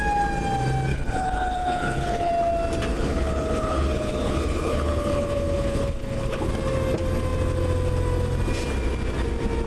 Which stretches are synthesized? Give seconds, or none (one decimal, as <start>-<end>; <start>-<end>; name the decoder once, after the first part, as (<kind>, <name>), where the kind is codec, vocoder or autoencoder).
0.9-2.3 (codec, HILCodec); 2.9-6.5